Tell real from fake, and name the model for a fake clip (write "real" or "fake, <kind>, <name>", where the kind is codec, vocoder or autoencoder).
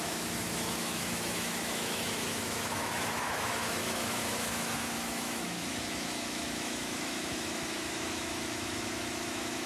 fake, autoencoder, DAC-VAE